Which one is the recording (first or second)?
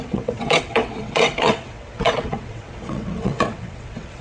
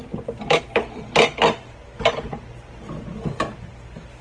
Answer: second